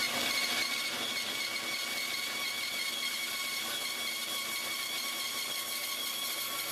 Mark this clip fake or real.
real